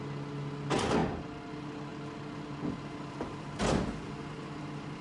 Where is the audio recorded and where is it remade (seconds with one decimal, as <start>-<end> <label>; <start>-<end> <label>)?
0.0-5.0 recorded